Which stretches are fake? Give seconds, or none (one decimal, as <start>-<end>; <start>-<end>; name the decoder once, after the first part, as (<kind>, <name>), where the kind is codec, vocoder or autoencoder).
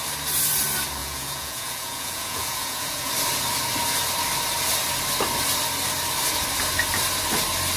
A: 1.0-3.1 (vocoder, Vocos)